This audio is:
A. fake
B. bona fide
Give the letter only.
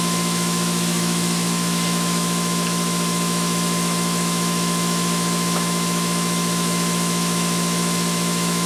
A